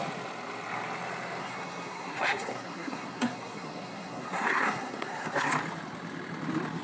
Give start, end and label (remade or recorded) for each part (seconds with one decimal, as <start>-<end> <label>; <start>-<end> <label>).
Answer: 0.0-1.4 recorded; 1.4-5.5 remade; 5.5-6.8 recorded